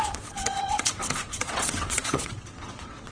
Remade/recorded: remade